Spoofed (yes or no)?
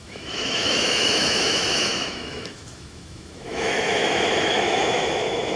yes